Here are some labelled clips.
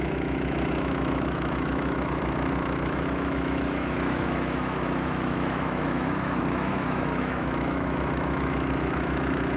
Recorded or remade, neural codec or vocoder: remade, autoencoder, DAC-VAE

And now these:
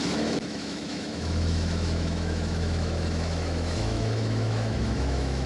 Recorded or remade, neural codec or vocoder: remade, autoencoder, DAC-VAE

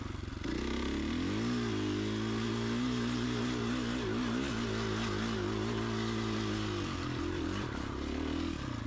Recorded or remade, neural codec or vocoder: recorded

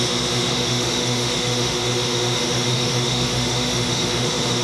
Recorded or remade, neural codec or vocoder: remade, autoencoder, DAC-VAE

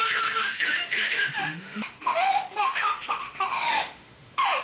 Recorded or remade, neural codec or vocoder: remade, autoencoder, DAC-VAE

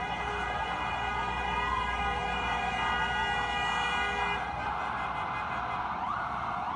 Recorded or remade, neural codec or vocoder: recorded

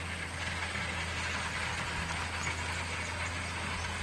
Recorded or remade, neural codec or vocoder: recorded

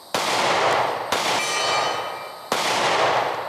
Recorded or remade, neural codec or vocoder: recorded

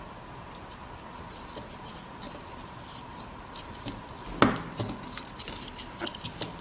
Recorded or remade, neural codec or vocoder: recorded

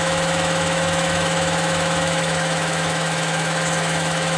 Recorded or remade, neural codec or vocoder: remade, autoencoder, DAC-VAE